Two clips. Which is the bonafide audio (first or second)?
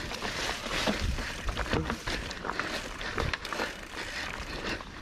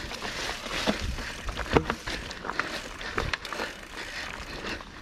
second